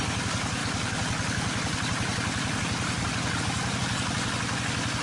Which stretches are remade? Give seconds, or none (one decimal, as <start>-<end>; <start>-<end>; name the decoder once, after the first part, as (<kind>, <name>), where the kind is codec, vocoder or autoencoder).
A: none